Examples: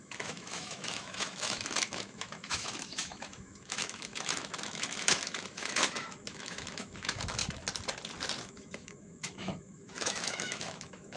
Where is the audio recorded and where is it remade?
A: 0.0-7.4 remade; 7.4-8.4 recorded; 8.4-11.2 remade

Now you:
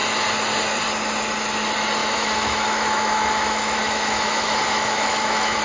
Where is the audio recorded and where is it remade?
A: 0.0-2.0 recorded; 2.0-5.6 remade

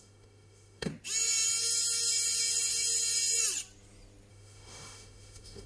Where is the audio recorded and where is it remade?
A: 0.0-0.9 remade; 0.9-4.3 recorded; 4.3-5.7 remade

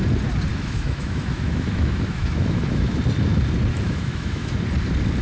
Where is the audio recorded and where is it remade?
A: 0.0-0.5 recorded; 0.5-3.0 remade; 3.0-3.7 recorded; 3.7-4.6 remade; 4.6-5.2 recorded

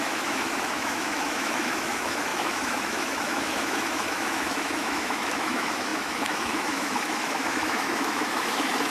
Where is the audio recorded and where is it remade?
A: 0.0-8.9 remade

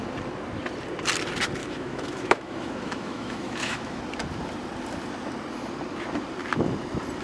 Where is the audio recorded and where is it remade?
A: 0.0-1.6 recorded; 1.6-4.0 remade; 4.0-7.2 recorded

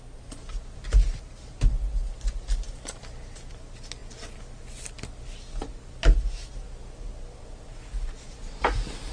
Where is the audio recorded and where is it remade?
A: 0.0-9.1 recorded

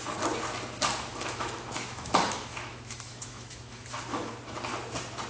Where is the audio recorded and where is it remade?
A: 0.0-1.1 recorded; 1.1-4.3 remade; 4.3-5.3 recorded